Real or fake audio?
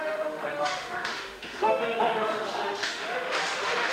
fake